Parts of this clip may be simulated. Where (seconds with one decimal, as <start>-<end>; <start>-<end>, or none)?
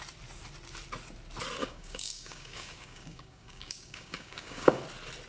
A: 1.6-4.8